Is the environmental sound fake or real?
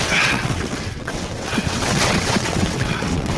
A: fake